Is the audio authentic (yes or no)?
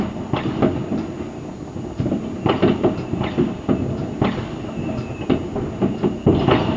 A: yes